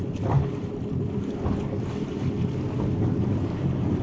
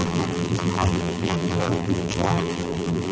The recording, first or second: first